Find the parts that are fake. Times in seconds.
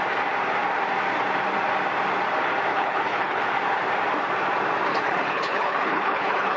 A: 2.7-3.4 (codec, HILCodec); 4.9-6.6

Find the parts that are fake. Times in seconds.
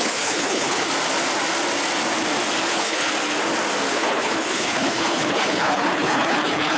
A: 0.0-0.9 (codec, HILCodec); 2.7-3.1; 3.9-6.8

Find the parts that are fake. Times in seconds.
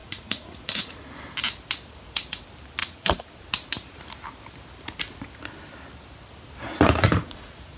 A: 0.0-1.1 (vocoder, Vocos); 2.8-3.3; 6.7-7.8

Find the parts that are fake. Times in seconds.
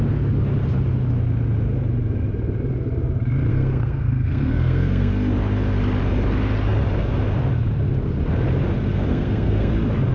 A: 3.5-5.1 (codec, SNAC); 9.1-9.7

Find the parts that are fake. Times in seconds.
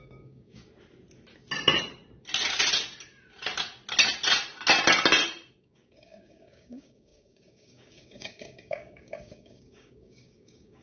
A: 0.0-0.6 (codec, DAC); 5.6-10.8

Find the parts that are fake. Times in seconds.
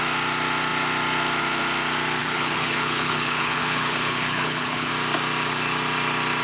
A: 2.2-4.9 (codec, HILCodec)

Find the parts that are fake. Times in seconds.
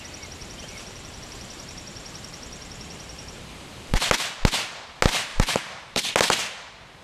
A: 0.4-4.0 (vocoder, BigVGAN v2); 5.3-6.1